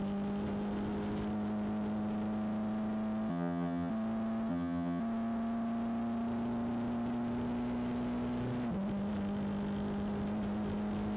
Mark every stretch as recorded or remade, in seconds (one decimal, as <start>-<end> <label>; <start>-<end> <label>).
0.0-3.3 recorded; 3.3-3.9 remade; 3.9-4.5 recorded; 4.5-5.0 remade; 5.0-11.2 recorded

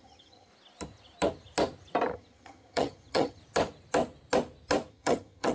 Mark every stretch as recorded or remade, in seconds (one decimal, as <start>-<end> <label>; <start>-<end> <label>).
0.0-0.5 remade; 0.5-2.1 recorded; 2.1-3.4 remade; 3.4-4.9 recorded; 4.9-5.5 remade